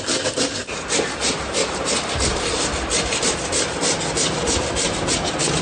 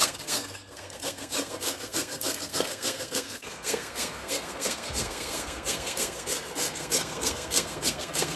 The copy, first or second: second